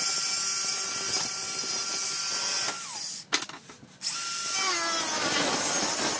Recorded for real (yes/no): yes